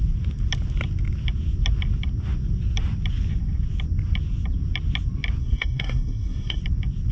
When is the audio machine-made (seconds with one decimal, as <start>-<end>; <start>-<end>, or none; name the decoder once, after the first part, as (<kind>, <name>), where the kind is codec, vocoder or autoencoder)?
5.4-6.6 (codec, SNAC)